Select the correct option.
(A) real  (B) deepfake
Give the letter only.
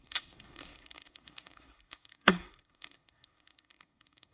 B